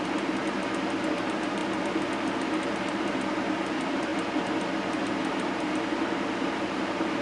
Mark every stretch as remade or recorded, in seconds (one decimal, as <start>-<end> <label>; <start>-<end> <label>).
0.0-0.4 remade; 0.4-1.2 recorded; 1.2-1.6 remade; 1.6-2.6 recorded; 2.6-4.1 remade; 4.1-5.0 recorded; 5.0-7.2 remade